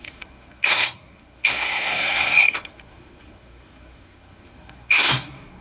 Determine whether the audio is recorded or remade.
remade